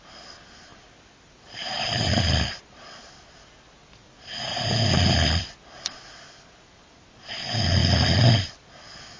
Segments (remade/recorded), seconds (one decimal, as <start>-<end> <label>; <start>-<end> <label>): 0.0-9.2 recorded